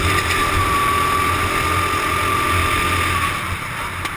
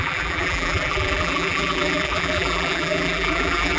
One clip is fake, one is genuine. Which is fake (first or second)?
second